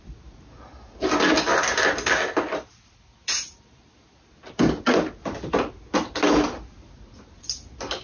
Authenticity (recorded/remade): recorded